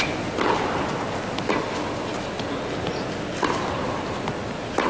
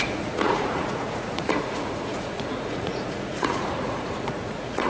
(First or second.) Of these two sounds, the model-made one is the second